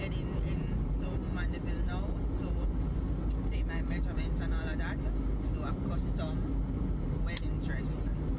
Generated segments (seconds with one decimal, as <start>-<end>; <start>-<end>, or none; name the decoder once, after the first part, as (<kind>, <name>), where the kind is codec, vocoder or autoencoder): none